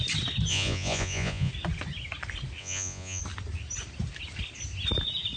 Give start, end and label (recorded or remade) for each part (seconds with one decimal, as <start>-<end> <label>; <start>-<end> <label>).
0.0-0.5 recorded; 0.5-1.5 remade; 1.5-2.6 recorded; 2.6-3.2 remade; 3.2-5.4 recorded